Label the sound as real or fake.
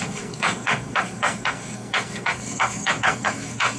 fake